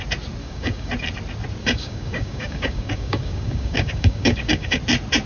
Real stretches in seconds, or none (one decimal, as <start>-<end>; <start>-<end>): 0.0-0.4; 0.9-1.6; 4.8-5.3